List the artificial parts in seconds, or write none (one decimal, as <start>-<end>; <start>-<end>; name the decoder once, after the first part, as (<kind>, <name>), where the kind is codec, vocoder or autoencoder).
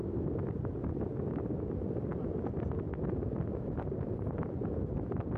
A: none